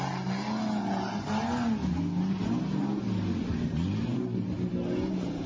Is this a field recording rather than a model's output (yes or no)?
yes